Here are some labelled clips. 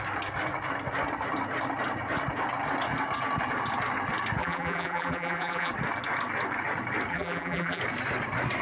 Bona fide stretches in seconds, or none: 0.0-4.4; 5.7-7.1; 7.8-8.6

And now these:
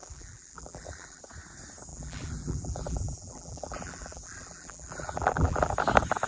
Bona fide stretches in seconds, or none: 1.2-1.9; 5.7-6.3